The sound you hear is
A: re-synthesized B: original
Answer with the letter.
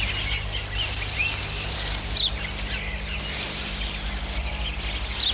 B